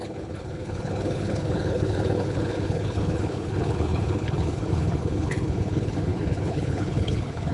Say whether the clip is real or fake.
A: fake